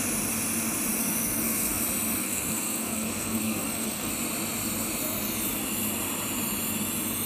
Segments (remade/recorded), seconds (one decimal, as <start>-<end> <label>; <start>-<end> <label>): 0.0-1.0 recorded; 1.0-1.8 remade; 1.8-2.2 recorded; 2.2-4.1 remade; 4.1-7.3 recorded